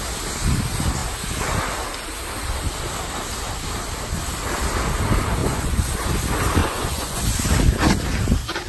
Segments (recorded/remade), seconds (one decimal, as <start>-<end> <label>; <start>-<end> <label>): 0.0-5.4 recorded; 5.4-5.9 remade; 5.9-6.6 recorded; 6.6-7.2 remade; 7.2-8.7 recorded